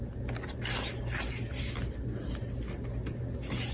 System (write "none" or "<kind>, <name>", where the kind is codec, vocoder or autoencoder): none